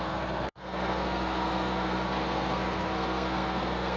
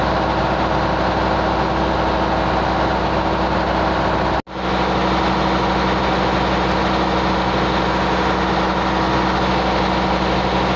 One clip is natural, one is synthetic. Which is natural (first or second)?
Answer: second